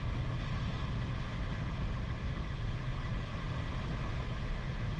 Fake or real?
real